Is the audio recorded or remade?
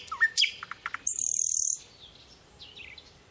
remade